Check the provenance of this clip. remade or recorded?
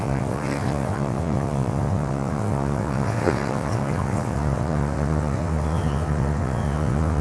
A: remade